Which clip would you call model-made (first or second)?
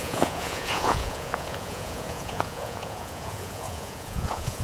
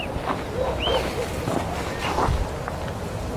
first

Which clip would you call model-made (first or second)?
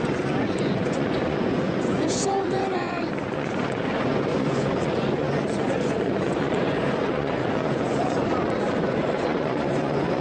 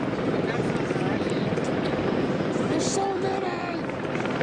first